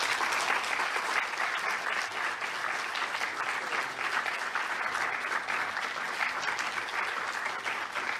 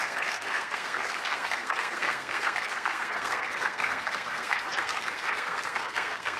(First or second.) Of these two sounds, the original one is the first